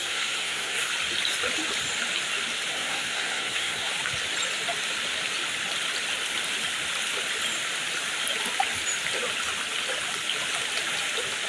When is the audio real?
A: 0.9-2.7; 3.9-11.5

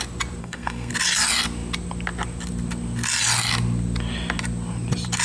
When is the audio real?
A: 0.0-0.4; 0.9-5.2

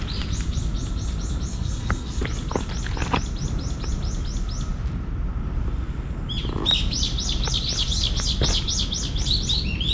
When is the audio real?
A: 0.0-1.5; 2.2-9.9

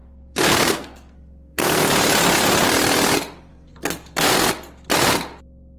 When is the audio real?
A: 1.8-3.5; 4.5-5.8

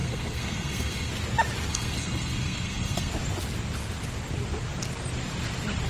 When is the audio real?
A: 1.1-1.7; 3.1-5.9

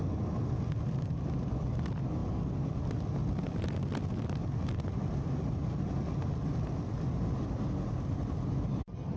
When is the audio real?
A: 0.0-9.2